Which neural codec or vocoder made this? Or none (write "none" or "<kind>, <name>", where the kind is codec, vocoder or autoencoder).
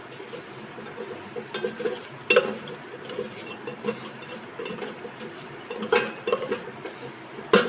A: none